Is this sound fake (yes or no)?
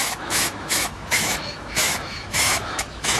yes